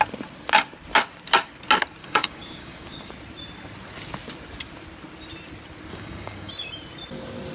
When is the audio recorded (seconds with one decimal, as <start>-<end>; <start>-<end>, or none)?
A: 0.0-2.0; 3.1-5.9; 6.5-7.5